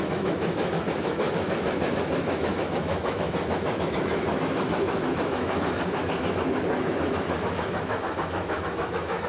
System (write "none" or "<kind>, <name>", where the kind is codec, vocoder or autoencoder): autoencoder, DAC-VAE